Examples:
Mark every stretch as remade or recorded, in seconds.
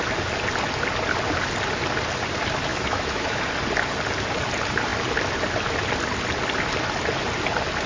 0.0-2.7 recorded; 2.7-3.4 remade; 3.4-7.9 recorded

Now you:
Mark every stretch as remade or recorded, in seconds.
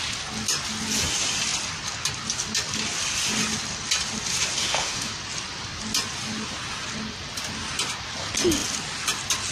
0.0-4.6 recorded; 4.6-5.1 remade; 5.1-9.5 recorded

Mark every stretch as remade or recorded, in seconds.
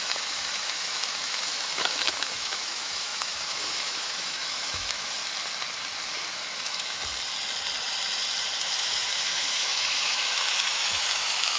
0.0-5.2 remade; 5.2-6.3 recorded; 6.3-7.0 remade; 7.0-8.6 recorded; 8.6-11.6 remade